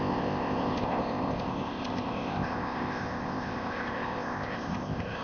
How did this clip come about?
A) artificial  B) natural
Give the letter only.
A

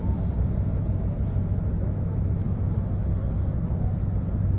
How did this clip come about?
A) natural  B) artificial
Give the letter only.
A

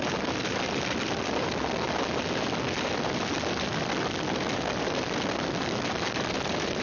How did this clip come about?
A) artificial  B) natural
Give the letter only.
A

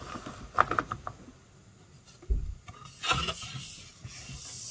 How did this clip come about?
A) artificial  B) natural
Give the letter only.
B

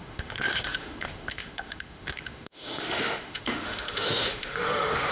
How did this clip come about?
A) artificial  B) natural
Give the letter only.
A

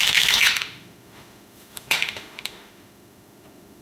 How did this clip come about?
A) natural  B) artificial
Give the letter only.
B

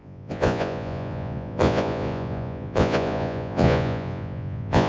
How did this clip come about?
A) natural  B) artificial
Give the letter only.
B